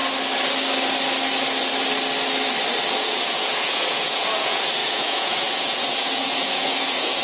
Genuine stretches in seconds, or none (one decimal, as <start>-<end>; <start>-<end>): 0.0-2.9